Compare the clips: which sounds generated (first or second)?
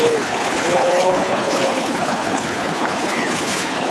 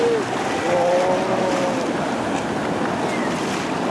first